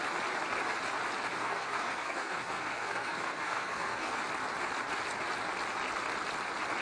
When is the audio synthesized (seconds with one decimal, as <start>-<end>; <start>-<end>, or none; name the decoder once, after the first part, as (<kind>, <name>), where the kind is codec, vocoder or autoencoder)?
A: 1.3-4.2 (codec, SNAC)